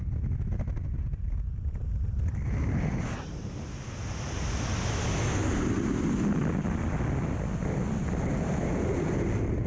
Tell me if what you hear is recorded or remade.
recorded